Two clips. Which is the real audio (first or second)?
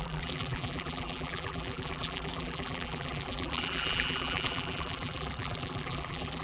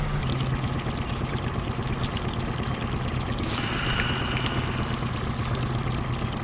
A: second